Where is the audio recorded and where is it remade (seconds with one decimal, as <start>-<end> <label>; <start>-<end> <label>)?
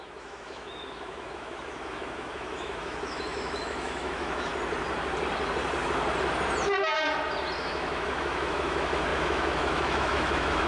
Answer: 0.0-4.5 remade; 4.5-7.6 recorded; 7.6-10.7 remade